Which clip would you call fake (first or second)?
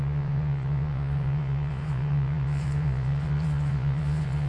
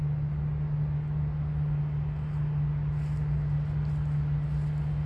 first